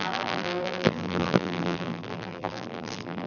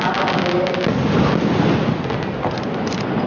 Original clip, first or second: second